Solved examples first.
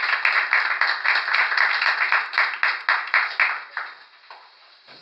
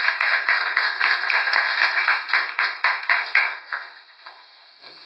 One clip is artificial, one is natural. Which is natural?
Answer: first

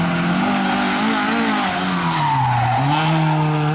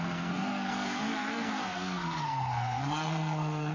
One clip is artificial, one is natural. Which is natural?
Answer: first